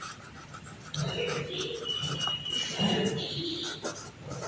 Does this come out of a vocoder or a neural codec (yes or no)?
no